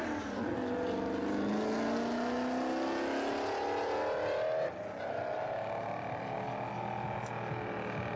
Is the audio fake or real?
real